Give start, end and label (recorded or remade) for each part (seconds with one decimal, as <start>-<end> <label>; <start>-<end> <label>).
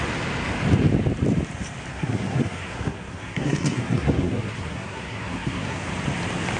0.0-1.9 recorded; 1.9-5.9 remade; 5.9-6.6 recorded